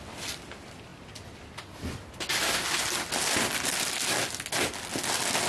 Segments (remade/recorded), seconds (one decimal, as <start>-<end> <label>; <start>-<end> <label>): 0.0-5.5 recorded